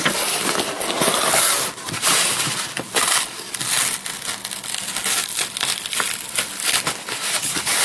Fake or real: real